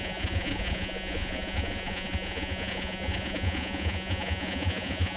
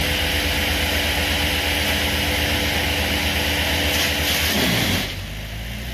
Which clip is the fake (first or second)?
first